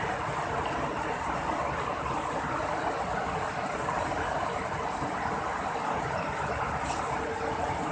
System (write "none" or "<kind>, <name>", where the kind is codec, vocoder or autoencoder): none